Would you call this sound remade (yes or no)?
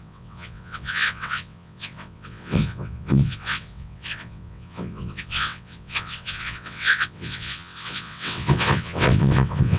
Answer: yes